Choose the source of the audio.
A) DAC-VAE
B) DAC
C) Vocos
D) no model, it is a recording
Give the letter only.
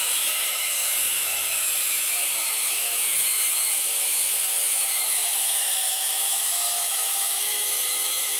A